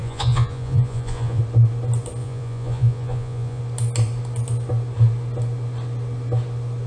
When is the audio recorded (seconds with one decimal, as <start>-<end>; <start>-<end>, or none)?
1.4-2.2; 3.6-6.9